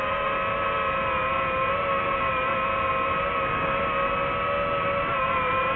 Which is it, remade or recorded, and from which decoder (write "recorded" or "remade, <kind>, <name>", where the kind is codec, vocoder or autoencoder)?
recorded